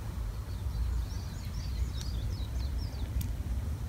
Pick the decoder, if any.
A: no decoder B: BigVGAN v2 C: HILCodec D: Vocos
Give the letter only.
A